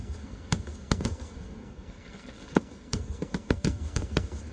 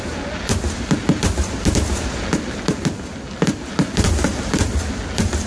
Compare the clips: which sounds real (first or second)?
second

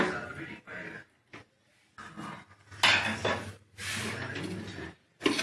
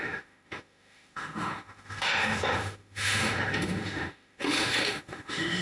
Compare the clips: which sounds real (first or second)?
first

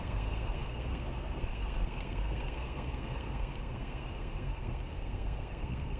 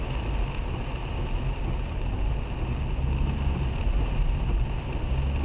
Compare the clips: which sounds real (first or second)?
second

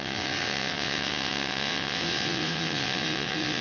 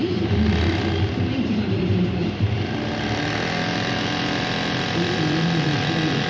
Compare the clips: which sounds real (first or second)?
second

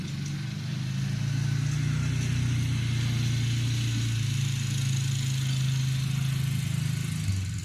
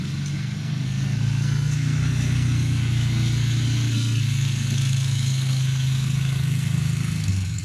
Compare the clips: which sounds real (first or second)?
first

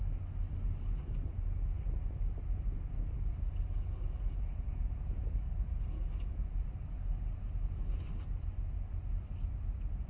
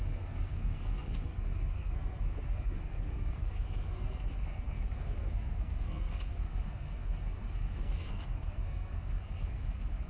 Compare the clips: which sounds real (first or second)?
first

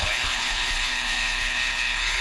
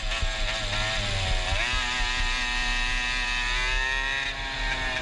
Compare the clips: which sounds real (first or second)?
second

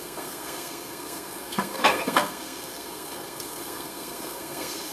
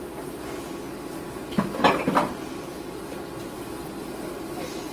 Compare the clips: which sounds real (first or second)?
second